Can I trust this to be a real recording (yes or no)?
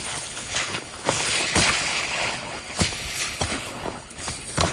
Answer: no